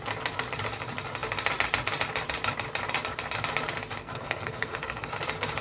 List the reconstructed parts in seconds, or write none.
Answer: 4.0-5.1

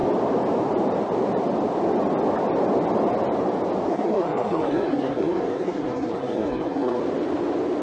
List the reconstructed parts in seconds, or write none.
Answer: 3.9-7.0

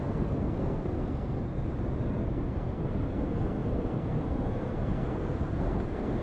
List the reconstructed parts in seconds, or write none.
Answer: 0.0-1.5; 2.0-6.2